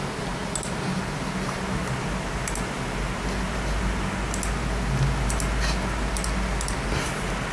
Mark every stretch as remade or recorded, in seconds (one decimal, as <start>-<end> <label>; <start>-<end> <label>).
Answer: 0.0-7.5 recorded